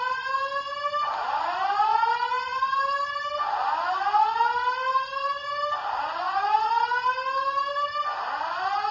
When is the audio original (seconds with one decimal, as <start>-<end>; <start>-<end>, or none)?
0.0-8.9